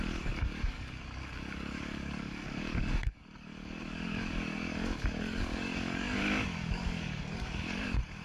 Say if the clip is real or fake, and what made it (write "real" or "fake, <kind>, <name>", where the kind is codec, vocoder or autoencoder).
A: fake, codec, DAC